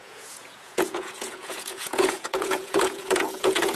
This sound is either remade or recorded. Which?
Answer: remade